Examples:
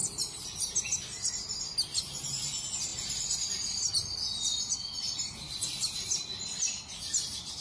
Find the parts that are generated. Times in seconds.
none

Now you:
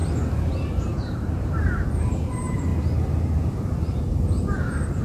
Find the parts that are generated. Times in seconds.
0.0-2.7 (vocoder, BigVGAN v2); 4.0-5.0